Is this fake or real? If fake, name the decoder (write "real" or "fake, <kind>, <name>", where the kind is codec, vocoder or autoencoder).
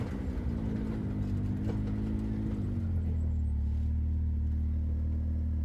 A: real